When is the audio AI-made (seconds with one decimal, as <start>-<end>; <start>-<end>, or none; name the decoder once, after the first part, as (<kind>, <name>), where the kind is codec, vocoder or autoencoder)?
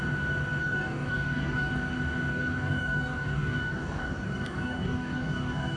0.6-1.7 (codec, DAC); 2.3-5.8